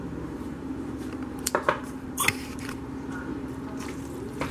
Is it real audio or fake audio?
fake